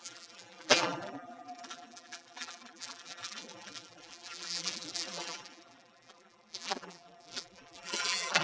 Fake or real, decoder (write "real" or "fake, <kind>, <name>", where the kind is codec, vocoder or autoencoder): fake, vocoder, BigVGAN v2